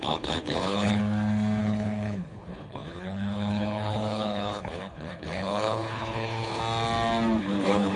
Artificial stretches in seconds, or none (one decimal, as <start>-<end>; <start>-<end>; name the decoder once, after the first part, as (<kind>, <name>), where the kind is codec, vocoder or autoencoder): 0.0-1.0 (codec, HILCodec); 1.6-6.6; 7.4-8.0